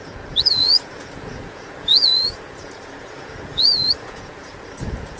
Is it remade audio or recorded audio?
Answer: remade